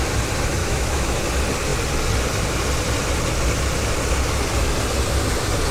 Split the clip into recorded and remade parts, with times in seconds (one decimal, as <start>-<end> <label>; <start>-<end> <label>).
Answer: 0.0-0.6 recorded; 0.6-1.2 remade; 1.2-5.7 recorded

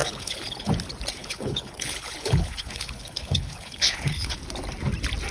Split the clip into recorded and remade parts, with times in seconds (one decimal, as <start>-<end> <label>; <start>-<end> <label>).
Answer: 0.0-0.7 remade; 0.7-1.2 recorded; 1.2-4.4 remade; 4.4-5.3 recorded

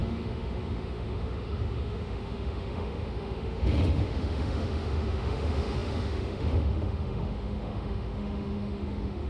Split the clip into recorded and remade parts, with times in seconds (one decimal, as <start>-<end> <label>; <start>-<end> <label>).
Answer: 0.0-9.3 remade

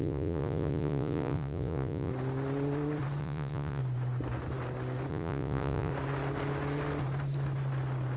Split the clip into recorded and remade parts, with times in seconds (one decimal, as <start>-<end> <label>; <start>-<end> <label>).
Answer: 0.0-2.1 remade; 2.1-3.2 recorded; 3.2-3.8 remade; 3.8-5.1 recorded; 5.1-5.9 remade; 5.9-8.2 recorded